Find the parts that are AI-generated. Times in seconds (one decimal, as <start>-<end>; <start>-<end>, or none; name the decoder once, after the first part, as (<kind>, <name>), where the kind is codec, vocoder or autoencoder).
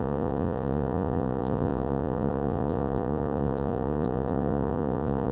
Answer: 0.0-5.3 (vocoder, Vocos)